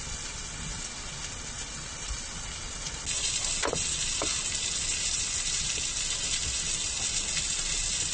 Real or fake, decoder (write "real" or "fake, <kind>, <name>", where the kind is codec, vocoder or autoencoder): real